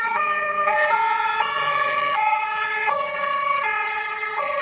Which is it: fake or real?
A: fake